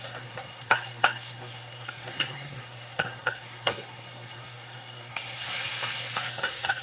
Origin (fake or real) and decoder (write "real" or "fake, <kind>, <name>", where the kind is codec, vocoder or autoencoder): fake, codec, SNAC